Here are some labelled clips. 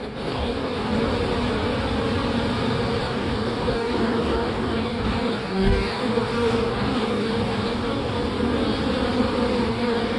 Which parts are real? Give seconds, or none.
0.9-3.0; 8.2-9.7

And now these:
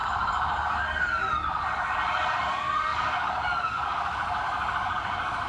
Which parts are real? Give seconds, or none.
none

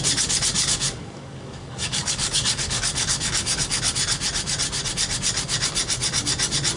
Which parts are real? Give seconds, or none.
0.0-0.5; 3.8-6.8

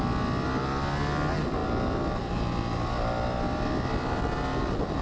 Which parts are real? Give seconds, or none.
0.0-5.0

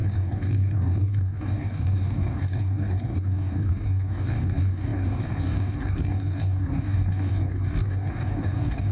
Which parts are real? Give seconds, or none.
none

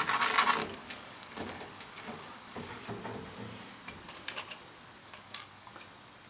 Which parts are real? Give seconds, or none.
0.0-0.6; 2.9-5.0; 5.7-6.3